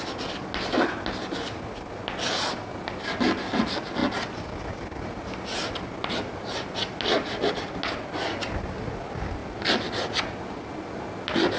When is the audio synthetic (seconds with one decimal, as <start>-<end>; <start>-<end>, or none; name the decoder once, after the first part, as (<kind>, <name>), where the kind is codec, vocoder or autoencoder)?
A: none